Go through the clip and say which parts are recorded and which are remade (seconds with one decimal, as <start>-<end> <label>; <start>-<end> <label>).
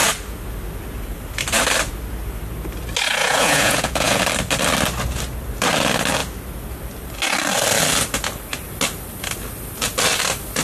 0.0-3.2 recorded; 3.2-4.2 remade; 4.2-10.6 recorded